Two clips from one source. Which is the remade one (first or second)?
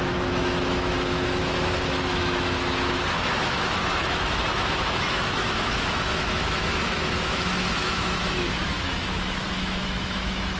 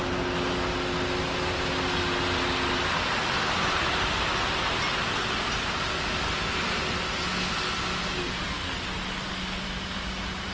first